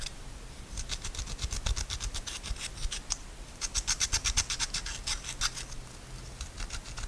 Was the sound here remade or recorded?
recorded